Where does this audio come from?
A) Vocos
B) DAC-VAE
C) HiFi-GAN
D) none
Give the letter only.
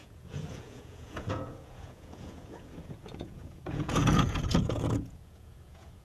A